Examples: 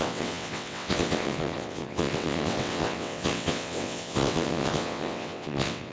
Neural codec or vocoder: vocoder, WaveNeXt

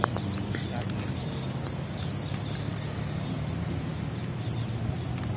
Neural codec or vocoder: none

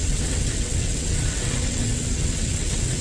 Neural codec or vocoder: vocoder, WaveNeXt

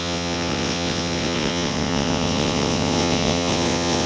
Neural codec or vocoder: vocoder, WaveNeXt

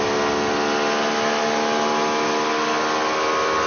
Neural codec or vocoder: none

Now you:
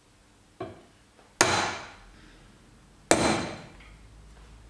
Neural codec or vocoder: none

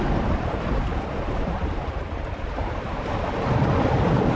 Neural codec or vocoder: none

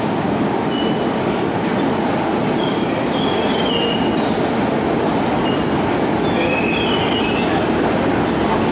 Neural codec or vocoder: none